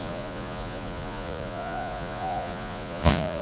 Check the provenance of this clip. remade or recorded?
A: remade